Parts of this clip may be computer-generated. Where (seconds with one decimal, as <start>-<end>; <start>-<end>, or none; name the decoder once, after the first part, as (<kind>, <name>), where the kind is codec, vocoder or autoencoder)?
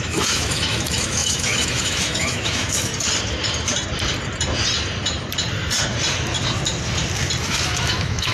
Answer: 0.0-2.9 (autoencoder, DAC-VAE); 7.4-8.3